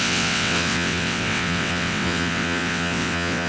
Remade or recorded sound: remade